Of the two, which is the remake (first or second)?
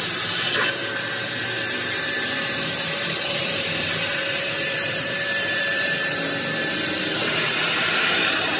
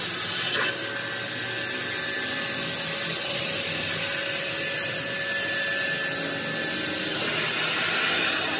first